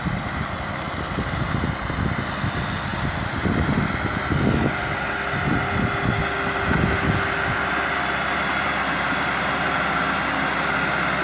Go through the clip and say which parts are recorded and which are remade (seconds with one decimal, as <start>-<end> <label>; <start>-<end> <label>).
0.0-11.2 recorded